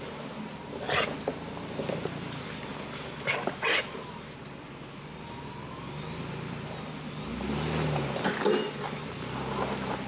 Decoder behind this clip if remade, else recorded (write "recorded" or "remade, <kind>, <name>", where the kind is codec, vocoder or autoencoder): recorded